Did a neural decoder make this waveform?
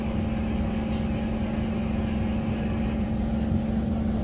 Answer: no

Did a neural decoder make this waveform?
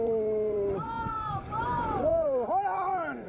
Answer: yes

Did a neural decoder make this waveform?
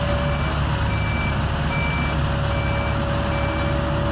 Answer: no